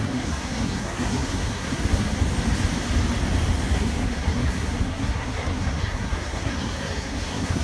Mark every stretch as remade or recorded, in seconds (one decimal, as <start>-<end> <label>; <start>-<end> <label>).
0.0-2.2 remade; 2.2-3.7 recorded; 3.7-7.6 remade